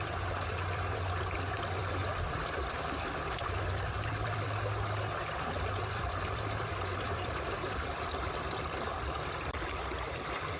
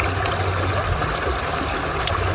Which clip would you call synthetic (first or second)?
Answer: first